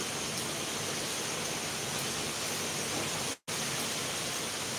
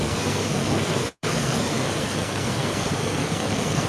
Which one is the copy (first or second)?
second